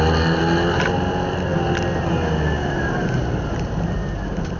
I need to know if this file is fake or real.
real